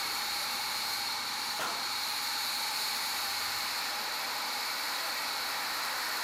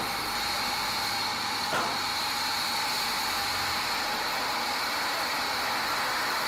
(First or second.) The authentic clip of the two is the second